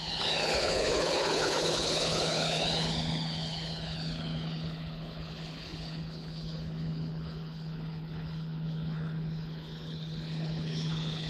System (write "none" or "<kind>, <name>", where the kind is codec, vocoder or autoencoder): codec, HILCodec